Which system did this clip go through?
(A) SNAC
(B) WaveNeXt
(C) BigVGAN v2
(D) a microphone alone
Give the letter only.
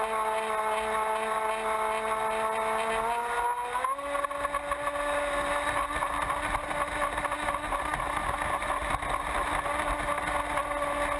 D